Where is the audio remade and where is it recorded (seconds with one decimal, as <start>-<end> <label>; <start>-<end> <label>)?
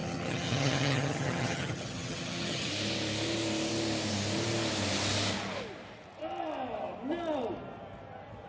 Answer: 0.0-2.7 remade; 2.7-8.5 recorded